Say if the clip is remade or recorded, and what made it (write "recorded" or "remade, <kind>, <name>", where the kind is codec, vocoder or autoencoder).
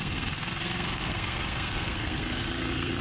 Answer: remade, codec, SNAC